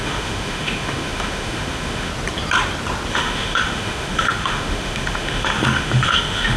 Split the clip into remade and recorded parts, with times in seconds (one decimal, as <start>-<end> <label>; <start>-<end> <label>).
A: 0.0-2.1 remade; 2.1-3.1 recorded; 3.1-6.6 remade